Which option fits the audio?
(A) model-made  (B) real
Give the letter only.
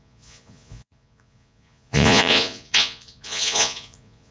A